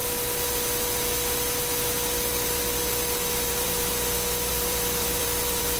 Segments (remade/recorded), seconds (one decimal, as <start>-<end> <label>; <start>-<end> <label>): 0.0-3.5 recorded; 3.5-3.9 remade; 3.9-4.5 recorded; 4.5-5.8 remade